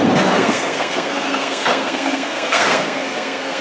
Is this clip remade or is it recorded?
remade